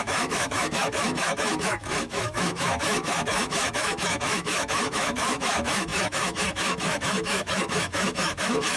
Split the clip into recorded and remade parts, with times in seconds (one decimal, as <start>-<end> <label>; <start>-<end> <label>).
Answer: 0.0-8.8 remade

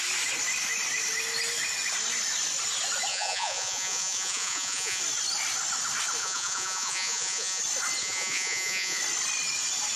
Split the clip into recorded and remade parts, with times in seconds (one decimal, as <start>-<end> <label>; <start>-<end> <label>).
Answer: 0.0-3.1 recorded; 3.1-5.0 remade; 5.0-6.2 recorded; 6.2-7.6 remade; 7.6-8.0 recorded; 8.0-9.0 remade; 9.0-10.0 recorded

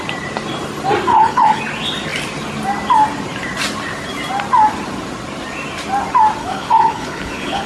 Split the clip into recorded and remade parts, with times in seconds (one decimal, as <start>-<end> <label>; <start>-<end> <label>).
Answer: 0.0-1.1 recorded; 1.1-1.6 remade; 1.6-6.4 recorded; 6.4-7.7 remade

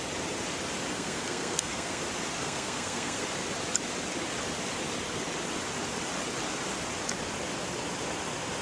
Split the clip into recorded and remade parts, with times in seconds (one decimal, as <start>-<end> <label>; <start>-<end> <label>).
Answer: 0.0-0.9 recorded; 0.9-2.0 remade; 2.0-2.4 recorded; 2.4-3.2 remade; 3.2-8.6 recorded

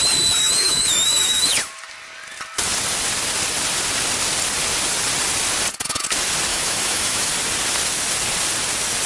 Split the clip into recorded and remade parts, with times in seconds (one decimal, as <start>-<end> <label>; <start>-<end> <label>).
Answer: 0.0-0.4 recorded; 0.4-1.7 remade; 1.7-6.5 recorded; 6.5-7.3 remade; 7.3-9.1 recorded

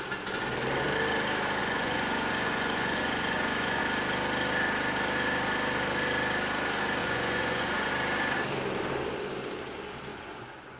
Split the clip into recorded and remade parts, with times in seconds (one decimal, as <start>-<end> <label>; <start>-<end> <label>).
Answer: 0.0-1.6 recorded; 1.6-3.8 remade; 3.8-7.0 recorded; 7.0-7.9 remade; 7.9-10.1 recorded; 10.1-10.8 remade

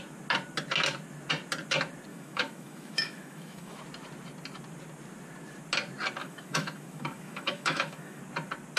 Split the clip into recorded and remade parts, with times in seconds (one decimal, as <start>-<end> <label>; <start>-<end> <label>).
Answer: 0.0-2.1 recorded; 2.1-3.8 remade; 3.8-6.2 recorded; 6.2-8.2 remade; 8.2-8.8 recorded

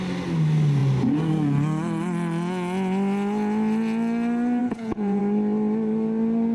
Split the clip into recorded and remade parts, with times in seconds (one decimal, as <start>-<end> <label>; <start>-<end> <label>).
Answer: 0.0-4.6 recorded; 4.6-5.2 remade; 5.2-6.5 recorded